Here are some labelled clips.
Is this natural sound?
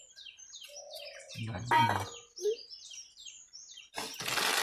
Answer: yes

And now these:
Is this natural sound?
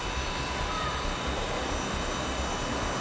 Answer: yes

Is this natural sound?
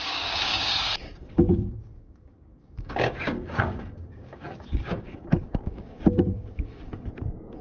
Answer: no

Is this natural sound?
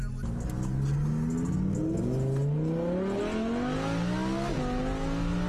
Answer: yes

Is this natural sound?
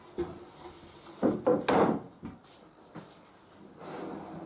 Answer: yes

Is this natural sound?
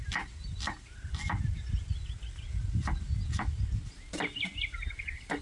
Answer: yes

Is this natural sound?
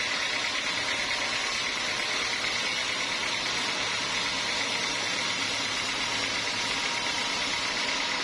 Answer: yes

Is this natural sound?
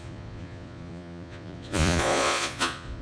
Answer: no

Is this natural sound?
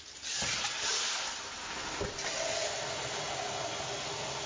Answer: yes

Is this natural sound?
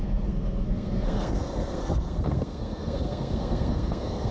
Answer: no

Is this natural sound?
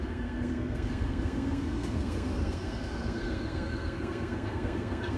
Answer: no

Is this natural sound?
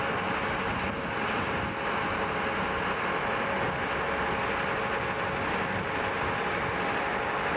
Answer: yes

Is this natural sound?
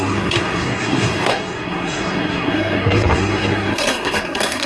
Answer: no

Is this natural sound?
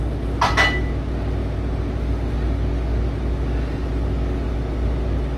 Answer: yes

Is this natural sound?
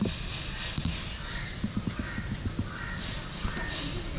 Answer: yes